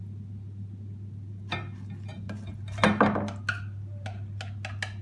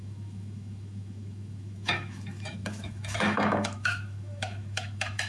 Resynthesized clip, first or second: second